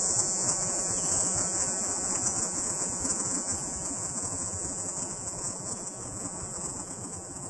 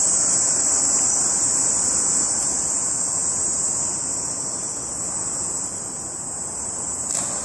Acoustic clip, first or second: second